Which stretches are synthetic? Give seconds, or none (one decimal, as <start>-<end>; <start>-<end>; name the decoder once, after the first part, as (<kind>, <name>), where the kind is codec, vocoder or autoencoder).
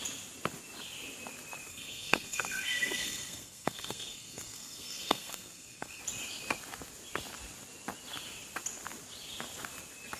1.7-6.0 (codec, SNAC)